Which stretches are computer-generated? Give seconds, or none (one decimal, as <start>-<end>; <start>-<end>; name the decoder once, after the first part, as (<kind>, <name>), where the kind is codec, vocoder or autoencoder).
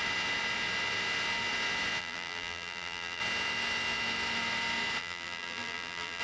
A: 2.0-3.2 (vocoder, BigVGAN v2); 5.0-6.2